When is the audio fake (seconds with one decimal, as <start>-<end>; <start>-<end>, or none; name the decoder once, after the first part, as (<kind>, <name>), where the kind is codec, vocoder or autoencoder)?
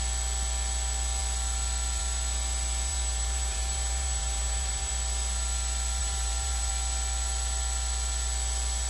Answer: 2.9-4.9 (vocoder, BigVGAN v2); 6.0-6.7